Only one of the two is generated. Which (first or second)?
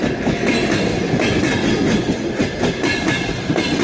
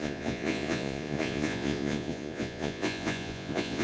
second